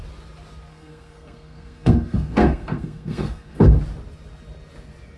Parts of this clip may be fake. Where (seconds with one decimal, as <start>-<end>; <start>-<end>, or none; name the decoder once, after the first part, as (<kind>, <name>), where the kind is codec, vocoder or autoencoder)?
0.7-3.8 (codec, SNAC)